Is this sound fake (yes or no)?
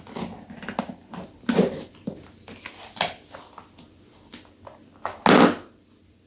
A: no